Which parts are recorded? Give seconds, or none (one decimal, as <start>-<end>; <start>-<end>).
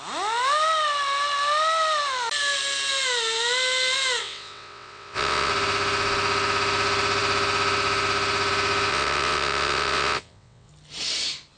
0.0-4.2; 5.5-8.9; 10.7-11.6